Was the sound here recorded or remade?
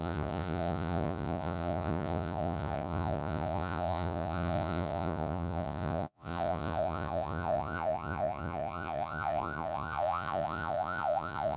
remade